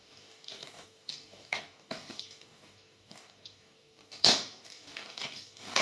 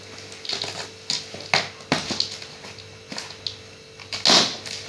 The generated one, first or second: first